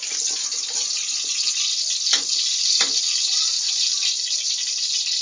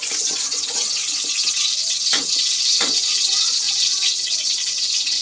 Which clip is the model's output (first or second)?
second